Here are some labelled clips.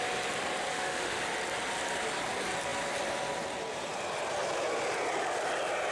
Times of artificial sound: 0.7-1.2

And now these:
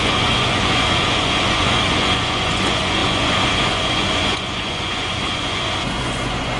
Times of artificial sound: 0.0-6.6

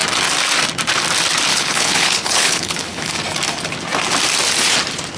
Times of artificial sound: 1.5-3.1

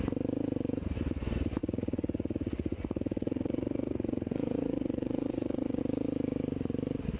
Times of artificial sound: 1.6-5.8

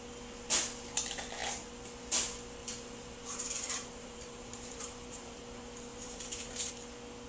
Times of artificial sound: 2.6-5.4; 5.9-6.7

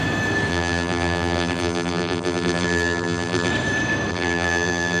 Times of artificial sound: 0.5-3.5; 4.1-5.0

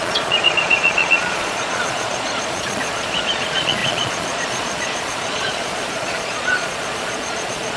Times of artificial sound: 0.0-7.8